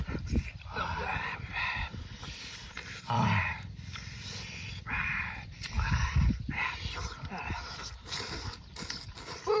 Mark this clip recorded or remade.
remade